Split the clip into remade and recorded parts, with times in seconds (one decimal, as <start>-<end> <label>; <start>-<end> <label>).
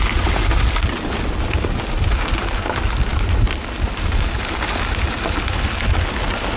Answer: 0.0-6.6 recorded